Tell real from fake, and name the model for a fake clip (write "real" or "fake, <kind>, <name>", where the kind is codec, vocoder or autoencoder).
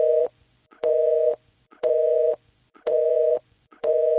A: fake, vocoder, Vocos